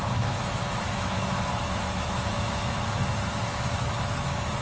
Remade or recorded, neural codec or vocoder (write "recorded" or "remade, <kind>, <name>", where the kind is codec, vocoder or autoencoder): remade, autoencoder, DAC-VAE